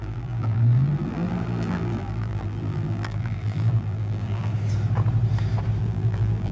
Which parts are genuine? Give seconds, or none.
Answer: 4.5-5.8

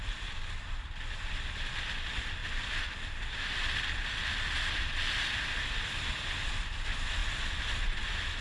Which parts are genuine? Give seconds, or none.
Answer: 0.0-2.4; 6.6-8.4

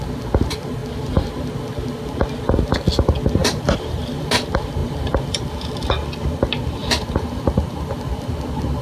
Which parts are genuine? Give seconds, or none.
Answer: 0.0-3.4; 4.3-4.8; 5.5-6.8; 8.3-8.8

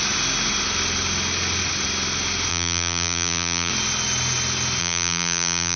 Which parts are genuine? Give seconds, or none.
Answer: 0.0-2.5; 3.7-4.8

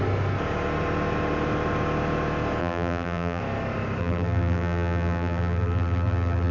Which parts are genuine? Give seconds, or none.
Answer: 0.0-2.6; 3.4-4.0